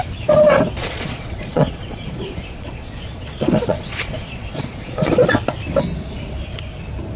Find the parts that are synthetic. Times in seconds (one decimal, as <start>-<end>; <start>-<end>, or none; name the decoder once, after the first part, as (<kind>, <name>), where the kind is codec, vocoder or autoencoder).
0.8-5.1 (vocoder, Vocos)

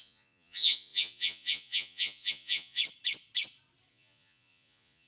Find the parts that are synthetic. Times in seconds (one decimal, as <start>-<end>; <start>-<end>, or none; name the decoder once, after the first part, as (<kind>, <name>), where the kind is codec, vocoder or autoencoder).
0.0-2.8 (vocoder, Vocos); 3.9-5.1